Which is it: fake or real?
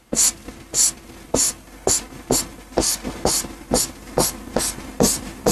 real